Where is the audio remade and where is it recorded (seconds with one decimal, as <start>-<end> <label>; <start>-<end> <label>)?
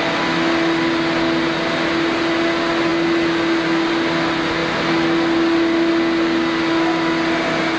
0.0-7.8 recorded